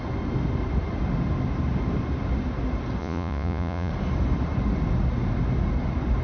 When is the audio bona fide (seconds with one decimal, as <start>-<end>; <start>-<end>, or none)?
0.0-3.0; 3.9-6.2